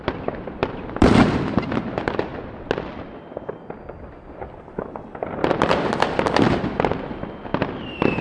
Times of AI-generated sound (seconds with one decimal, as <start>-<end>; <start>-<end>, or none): 0.0-2.3; 3.9-7.5